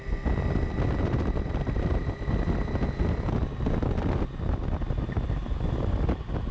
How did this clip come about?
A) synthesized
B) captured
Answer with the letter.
B